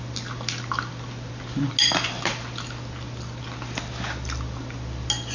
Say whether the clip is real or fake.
real